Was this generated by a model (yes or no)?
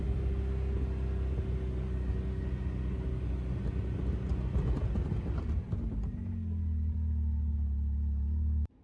no